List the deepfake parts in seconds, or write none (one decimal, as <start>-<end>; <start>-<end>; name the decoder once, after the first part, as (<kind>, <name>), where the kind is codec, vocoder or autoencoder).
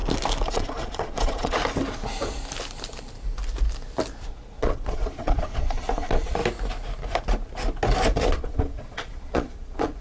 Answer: 0.5-1.6 (vocoder, Vocos); 4.3-6.4; 8.3-10.0